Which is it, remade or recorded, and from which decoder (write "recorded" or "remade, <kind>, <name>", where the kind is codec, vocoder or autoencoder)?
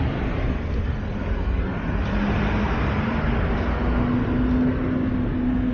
recorded